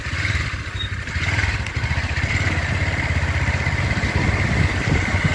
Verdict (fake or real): real